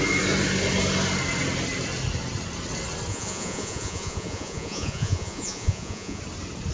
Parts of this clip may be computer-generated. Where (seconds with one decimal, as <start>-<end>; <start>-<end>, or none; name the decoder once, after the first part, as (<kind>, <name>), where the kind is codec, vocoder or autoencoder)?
3.1-6.2 (vocoder, Vocos)